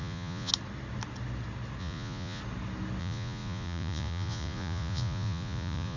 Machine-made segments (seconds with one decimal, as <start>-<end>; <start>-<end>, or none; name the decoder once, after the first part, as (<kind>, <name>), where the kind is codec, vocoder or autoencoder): 0.0-0.5 (vocoder, Vocos); 1.8-2.4; 3.0-6.0